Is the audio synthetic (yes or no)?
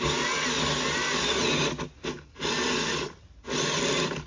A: no